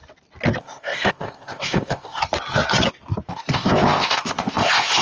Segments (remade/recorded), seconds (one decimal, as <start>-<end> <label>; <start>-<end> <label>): 0.0-0.6 recorded; 0.6-2.2 remade; 2.2-3.3 recorded; 3.3-5.0 remade